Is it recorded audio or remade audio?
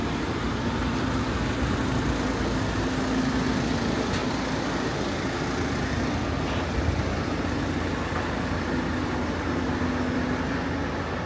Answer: recorded